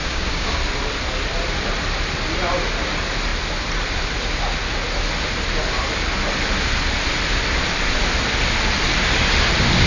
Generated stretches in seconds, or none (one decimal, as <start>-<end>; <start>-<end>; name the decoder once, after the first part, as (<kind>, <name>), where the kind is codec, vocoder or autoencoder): 0.0-0.6 (codec, DAC)